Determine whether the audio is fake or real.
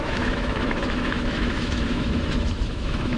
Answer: fake